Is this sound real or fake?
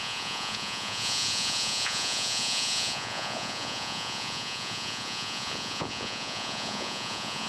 fake